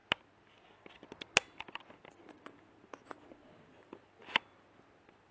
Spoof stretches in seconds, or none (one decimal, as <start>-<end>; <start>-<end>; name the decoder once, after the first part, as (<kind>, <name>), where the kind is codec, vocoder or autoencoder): none